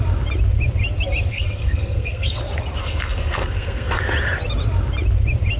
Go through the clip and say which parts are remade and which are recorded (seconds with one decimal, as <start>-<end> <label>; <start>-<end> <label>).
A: 0.0-1.3 recorded; 1.3-2.4 remade; 2.4-2.8 recorded; 2.8-4.0 remade; 4.0-5.6 recorded